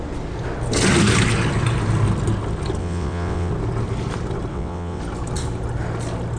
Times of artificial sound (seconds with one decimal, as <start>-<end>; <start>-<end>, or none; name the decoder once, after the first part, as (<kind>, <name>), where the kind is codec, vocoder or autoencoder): 2.8-3.5 (vocoder, WaveNeXt); 4.5-5.0

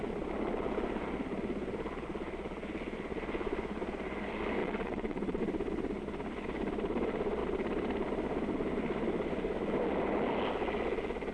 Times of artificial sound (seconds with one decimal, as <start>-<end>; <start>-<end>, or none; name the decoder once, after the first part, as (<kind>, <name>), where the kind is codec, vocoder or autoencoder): 4.6-5.4 (vocoder, WaveNeXt)

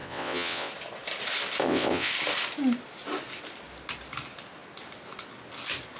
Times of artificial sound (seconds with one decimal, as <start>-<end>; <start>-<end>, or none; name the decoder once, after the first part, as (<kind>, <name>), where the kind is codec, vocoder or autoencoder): 0.0-0.7 (vocoder, WaveNeXt); 1.6-2.1

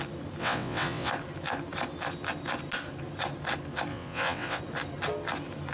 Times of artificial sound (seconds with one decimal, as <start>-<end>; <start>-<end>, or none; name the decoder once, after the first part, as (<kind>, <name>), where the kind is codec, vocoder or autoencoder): 0.4-1.1 (vocoder, WaveNeXt); 3.9-4.6

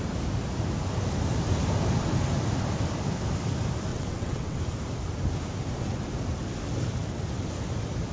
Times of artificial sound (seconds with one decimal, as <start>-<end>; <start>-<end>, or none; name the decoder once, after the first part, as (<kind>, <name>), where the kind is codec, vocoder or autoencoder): 3.9-4.6 (vocoder, WaveNeXt)

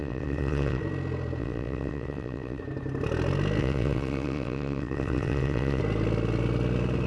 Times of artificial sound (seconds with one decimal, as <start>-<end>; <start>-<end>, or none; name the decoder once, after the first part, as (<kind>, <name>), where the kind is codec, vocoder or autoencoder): 0.0-0.8 (vocoder, WaveNeXt); 1.4-2.6; 3.6-5.8

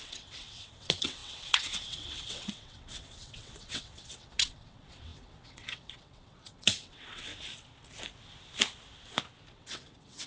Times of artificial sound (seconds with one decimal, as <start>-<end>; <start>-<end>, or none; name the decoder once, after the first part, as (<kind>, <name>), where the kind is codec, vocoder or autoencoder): 0.0-7.3 (vocoder, WaveNeXt); 9.5-10.3

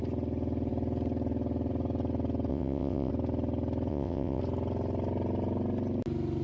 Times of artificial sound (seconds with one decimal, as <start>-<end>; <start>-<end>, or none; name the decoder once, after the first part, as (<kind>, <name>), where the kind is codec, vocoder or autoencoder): 2.5-3.1 (vocoder, WaveNeXt); 3.9-4.4